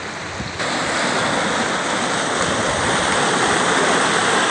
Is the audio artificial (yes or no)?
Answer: no